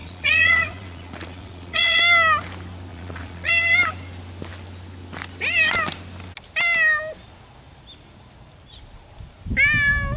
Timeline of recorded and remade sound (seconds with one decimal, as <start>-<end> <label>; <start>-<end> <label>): 0.0-2.0 remade; 2.0-2.9 recorded; 2.9-3.5 remade; 3.5-10.2 recorded